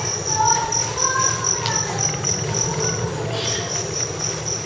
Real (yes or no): yes